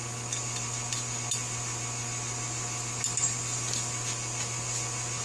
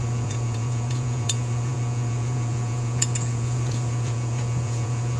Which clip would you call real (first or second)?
first